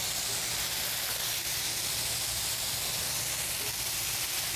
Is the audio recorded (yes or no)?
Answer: yes